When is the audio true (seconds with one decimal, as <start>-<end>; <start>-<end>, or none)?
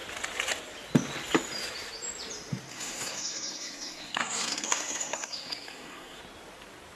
0.0-2.7; 6.2-7.0